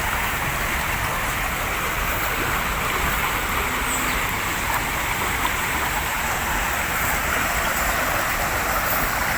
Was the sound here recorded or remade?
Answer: recorded